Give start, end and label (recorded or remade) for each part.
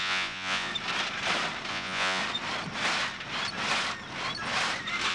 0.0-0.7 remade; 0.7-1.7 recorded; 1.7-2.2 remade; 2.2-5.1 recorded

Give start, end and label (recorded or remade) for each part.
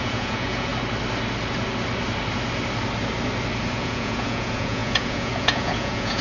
0.0-0.7 remade; 0.7-3.7 recorded; 3.7-6.2 remade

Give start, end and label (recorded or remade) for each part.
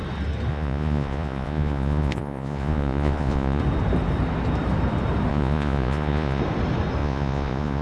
0.0-0.5 recorded; 0.5-3.6 remade; 3.6-5.3 recorded; 5.3-6.4 remade; 6.4-7.0 recorded; 7.0-7.8 remade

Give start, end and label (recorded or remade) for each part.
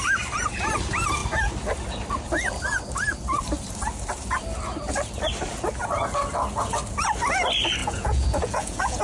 0.0-7.8 recorded; 7.8-9.0 remade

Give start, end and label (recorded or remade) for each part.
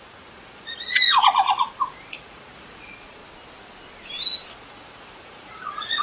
0.0-3.2 remade; 3.2-4.6 recorded; 4.6-6.0 remade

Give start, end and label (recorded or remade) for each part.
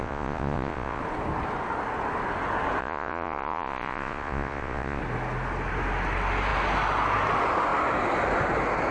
0.0-1.0 remade; 1.0-2.8 recorded; 2.8-5.0 remade; 5.0-8.9 recorded